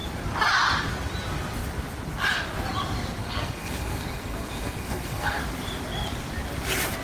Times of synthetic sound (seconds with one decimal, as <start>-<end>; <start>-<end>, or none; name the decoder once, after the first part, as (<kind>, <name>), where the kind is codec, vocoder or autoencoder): 3.2-5.4 (codec, SNAC)